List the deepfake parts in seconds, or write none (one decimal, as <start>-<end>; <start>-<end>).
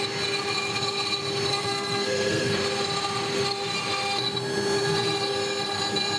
1.5-2.6